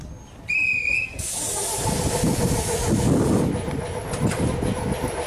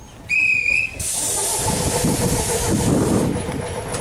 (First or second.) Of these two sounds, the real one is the first